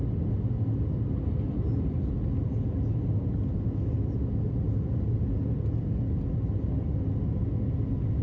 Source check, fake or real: real